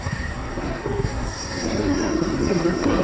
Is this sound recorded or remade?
remade